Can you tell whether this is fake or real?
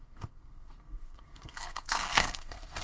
fake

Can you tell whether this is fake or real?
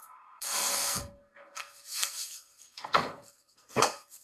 fake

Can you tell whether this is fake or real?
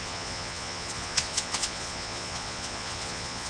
fake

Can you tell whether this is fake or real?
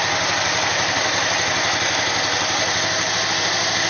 real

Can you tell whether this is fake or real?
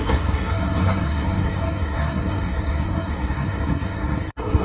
fake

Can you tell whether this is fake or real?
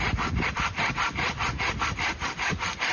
real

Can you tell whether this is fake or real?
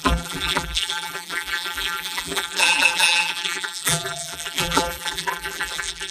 fake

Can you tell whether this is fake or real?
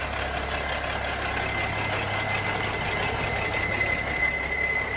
real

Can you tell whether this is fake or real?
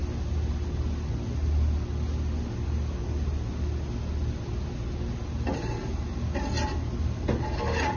real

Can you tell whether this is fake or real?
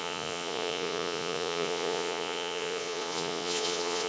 fake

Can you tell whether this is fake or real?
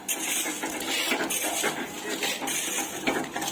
real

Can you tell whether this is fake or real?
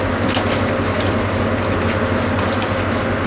real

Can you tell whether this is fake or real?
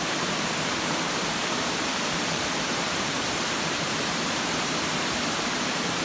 fake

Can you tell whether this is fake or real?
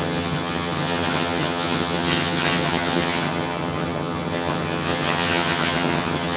fake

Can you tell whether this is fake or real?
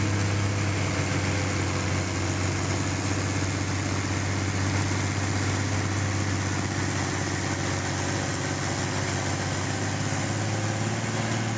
real